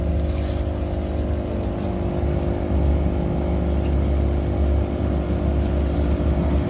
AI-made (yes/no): no